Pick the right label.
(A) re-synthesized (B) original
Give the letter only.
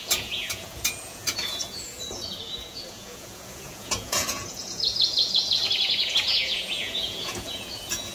A